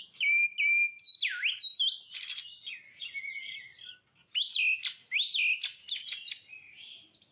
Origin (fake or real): real